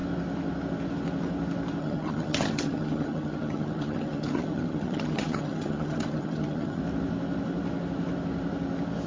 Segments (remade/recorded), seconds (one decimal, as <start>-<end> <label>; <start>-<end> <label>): 0.0-1.8 recorded; 1.8-6.8 remade; 6.8-9.1 recorded